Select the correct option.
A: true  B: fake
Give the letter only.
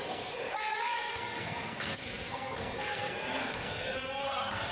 B